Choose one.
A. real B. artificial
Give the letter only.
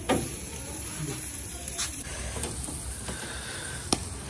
B